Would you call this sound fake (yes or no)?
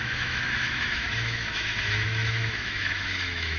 yes